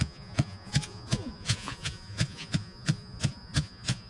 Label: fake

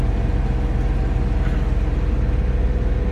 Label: real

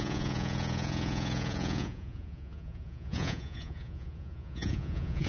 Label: fake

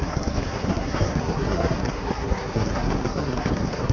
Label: fake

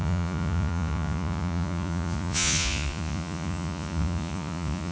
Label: fake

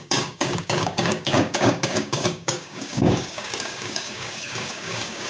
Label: fake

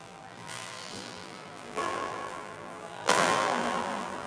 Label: fake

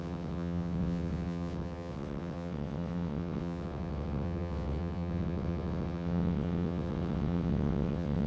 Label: fake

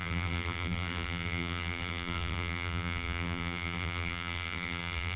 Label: fake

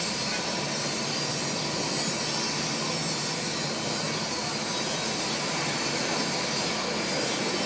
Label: real